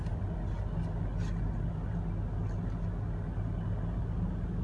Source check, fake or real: real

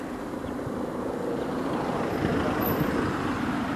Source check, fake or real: real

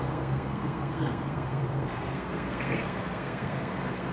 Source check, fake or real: fake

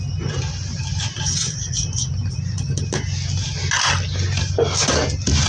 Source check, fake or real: real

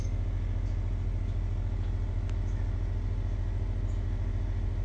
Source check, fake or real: real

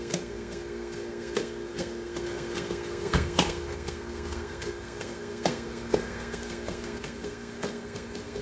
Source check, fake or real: fake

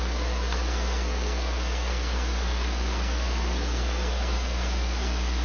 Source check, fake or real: fake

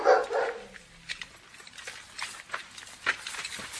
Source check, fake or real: real